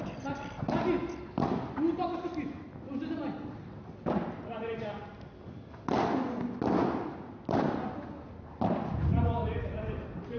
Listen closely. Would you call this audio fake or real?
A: real